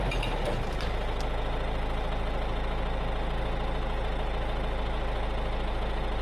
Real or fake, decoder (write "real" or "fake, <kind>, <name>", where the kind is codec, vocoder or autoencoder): real